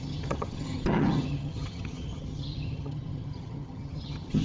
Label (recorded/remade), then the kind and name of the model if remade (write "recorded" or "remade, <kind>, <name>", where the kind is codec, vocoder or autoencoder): remade, vocoder, HiFi-GAN